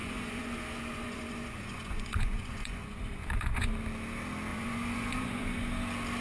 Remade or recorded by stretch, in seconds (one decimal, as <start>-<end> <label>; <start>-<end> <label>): 0.0-3.7 remade; 3.7-4.5 recorded; 4.5-5.7 remade; 5.7-6.2 recorded